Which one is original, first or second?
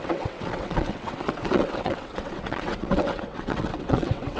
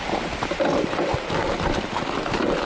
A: second